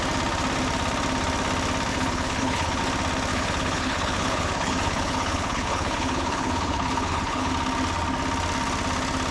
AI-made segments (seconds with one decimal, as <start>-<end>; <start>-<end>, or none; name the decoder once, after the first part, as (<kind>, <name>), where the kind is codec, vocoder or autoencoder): 1.9-2.8 (codec, HILCodec); 3.3-7.5